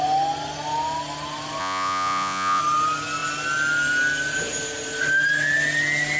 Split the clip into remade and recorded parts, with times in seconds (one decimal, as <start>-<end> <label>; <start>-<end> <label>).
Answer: 0.0-1.6 recorded; 1.6-2.6 remade; 2.6-6.2 recorded